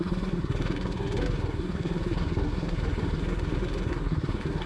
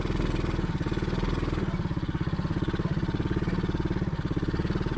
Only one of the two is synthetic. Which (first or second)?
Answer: first